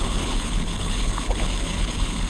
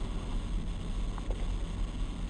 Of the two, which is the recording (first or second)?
second